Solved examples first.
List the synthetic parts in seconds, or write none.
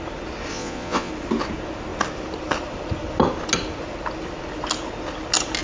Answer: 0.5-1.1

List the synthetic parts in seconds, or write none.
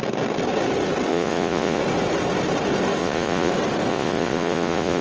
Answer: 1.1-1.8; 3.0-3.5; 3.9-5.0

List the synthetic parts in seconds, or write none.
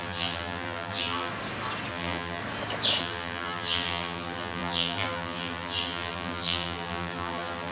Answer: 0.0-1.3; 1.9-2.4; 3.0-7.7